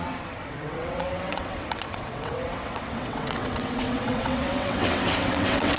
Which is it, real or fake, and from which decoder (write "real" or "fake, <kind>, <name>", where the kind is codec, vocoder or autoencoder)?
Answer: fake, vocoder, WaveNeXt